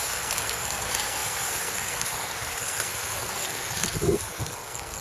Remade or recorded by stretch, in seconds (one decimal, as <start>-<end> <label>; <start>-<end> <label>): 0.0-5.0 remade